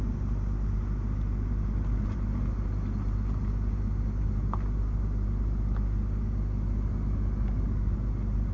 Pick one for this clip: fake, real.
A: real